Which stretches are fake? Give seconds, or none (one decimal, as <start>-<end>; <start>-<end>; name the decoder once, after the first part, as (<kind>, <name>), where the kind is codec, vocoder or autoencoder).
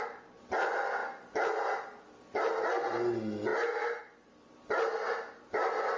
none